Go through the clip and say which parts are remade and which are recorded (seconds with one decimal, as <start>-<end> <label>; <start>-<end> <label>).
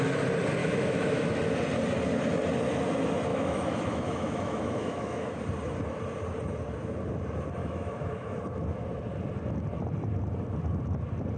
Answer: 0.0-0.6 recorded; 0.6-1.4 remade; 1.4-3.3 recorded; 3.3-5.4 remade; 5.4-7.6 recorded; 7.6-8.4 remade; 8.4-11.4 recorded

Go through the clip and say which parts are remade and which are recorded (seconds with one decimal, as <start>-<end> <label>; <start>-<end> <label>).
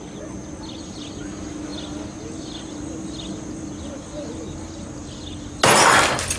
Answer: 0.0-6.4 recorded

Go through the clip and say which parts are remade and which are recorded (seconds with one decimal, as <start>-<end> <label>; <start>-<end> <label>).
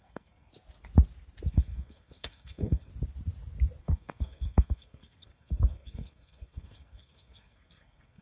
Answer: 0.0-0.5 remade; 0.5-1.5 recorded; 1.5-2.9 remade; 2.9-3.8 recorded; 3.8-8.2 remade